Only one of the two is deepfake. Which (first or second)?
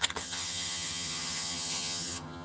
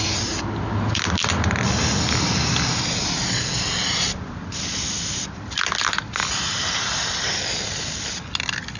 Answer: first